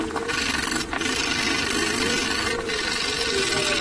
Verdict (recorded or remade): recorded